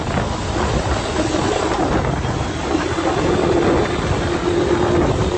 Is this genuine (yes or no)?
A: yes